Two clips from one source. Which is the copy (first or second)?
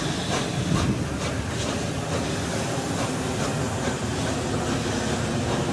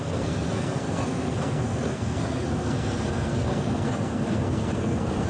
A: second